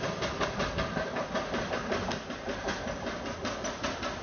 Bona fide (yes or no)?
yes